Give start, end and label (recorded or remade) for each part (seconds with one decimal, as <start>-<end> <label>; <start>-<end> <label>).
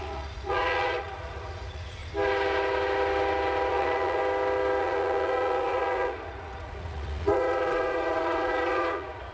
0.0-2.0 remade; 2.0-3.7 recorded; 3.7-4.2 remade; 4.2-4.8 recorded; 4.8-9.3 remade